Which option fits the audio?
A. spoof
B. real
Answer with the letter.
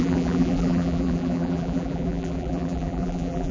A